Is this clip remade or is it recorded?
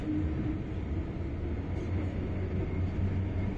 recorded